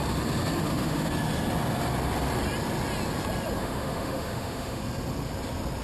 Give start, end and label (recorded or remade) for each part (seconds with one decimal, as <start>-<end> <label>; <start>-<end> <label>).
0.0-0.6 recorded; 0.6-1.1 remade; 1.1-3.6 recorded; 3.6-4.8 remade; 4.8-5.8 recorded